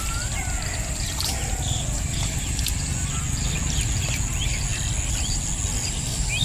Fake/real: real